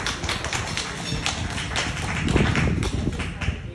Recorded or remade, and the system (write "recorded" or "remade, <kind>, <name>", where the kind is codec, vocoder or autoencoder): recorded